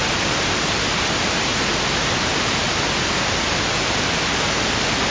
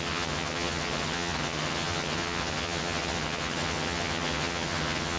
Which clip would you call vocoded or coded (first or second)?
second